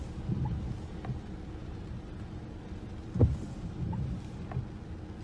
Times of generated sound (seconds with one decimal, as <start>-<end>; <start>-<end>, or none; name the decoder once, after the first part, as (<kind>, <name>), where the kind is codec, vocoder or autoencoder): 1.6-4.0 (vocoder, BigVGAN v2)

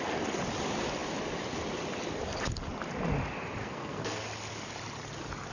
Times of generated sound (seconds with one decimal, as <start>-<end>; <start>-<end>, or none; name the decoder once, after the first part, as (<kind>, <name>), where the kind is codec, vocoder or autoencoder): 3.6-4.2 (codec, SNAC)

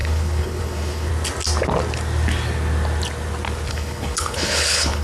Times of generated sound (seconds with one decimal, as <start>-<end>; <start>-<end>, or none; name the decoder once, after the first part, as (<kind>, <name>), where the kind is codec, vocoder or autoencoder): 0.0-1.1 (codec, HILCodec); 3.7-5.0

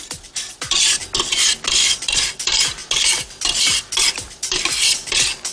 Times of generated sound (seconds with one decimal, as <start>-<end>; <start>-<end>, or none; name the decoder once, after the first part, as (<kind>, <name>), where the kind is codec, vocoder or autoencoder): 0.0-1.0 (vocoder, BigVGAN v2); 1.7-2.8; 3.4-5.5

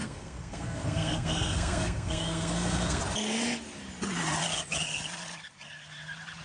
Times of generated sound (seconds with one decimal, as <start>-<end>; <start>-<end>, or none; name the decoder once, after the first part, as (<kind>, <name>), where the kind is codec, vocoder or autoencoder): 0.0-3.0 (codec, SNAC)